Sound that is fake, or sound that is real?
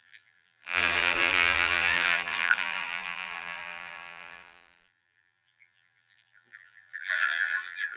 fake